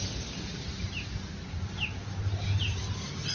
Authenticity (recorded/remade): recorded